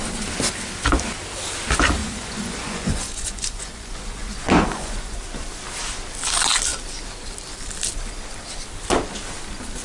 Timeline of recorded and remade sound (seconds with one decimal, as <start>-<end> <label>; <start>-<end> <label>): 0.0-2.0 recorded; 2.0-5.2 remade; 5.2-9.8 recorded

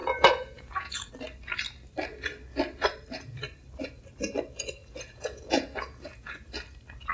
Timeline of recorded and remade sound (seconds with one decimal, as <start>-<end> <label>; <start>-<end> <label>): 0.0-1.1 remade; 1.1-4.8 recorded; 4.8-6.5 remade; 6.5-7.1 recorded